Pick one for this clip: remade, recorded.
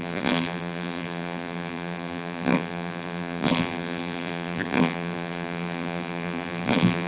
remade